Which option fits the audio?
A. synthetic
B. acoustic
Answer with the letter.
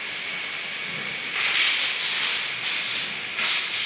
B